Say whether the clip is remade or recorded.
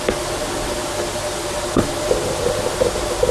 recorded